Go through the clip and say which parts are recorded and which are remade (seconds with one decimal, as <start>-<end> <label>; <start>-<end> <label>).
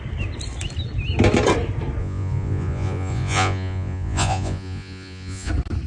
0.0-2.0 recorded; 2.0-5.5 remade; 5.5-5.9 recorded